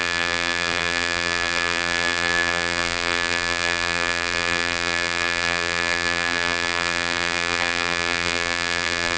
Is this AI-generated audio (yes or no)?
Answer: yes